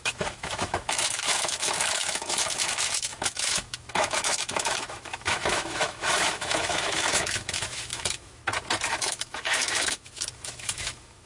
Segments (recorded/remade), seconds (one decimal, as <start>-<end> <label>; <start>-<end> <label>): 0.0-8.4 remade; 8.4-8.9 recorded; 8.9-11.3 remade